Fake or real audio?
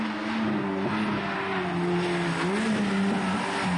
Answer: real